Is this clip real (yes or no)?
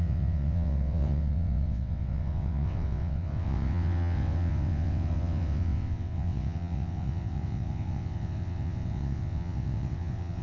no